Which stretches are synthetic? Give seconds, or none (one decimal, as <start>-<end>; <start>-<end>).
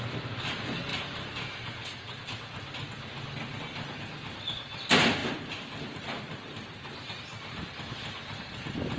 0.9-2.3; 5.2-7.7